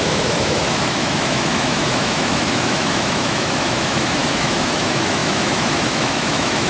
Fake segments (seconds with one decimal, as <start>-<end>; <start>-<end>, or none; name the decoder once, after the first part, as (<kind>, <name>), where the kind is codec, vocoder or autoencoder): 0.0-6.7 (autoencoder, DAC-VAE)